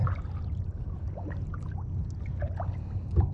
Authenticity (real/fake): real